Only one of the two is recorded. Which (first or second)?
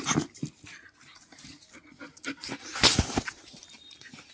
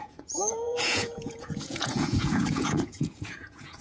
first